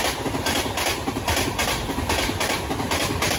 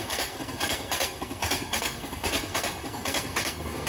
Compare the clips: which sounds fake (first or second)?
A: second